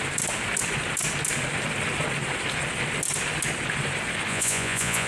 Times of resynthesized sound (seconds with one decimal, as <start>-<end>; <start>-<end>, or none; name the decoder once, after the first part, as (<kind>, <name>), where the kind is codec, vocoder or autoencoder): 4.3-5.1 (vocoder, Vocos)